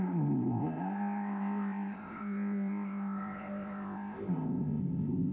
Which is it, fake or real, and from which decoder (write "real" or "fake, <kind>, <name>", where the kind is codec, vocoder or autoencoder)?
fake, codec, ZipCodec